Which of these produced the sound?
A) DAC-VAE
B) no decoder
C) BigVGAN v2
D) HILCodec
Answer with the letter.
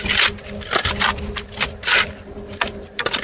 B